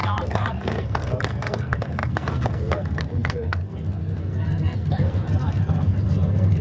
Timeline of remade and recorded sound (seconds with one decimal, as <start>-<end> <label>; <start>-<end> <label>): 0.0-6.6 remade